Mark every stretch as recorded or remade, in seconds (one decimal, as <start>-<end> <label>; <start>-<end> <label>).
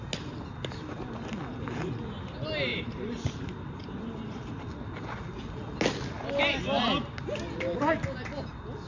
0.0-2.7 recorded; 2.7-4.6 remade; 4.6-8.9 recorded